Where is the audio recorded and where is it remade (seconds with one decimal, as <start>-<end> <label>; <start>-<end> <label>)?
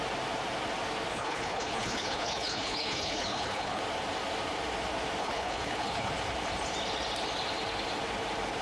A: 0.0-1.1 recorded; 1.1-3.8 remade; 3.8-5.2 recorded; 5.2-6.1 remade; 6.1-8.6 recorded